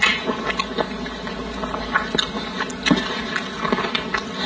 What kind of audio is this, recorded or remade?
recorded